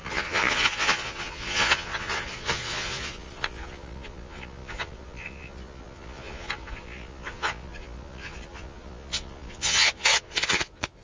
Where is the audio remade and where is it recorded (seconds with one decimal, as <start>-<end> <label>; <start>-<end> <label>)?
0.0-11.0 remade